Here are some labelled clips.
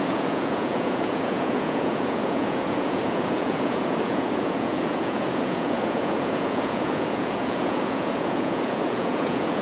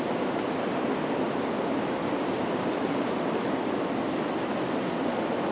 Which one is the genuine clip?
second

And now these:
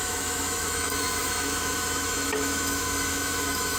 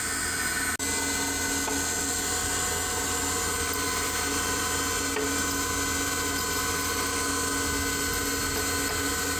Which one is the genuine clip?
second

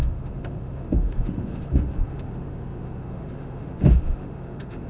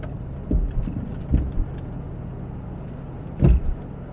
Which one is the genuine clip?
second